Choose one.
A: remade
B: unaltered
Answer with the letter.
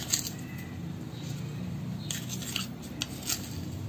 B